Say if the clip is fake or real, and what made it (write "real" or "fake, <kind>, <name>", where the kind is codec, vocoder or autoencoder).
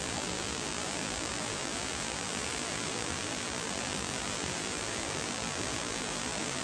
fake, vocoder, BigVGAN v2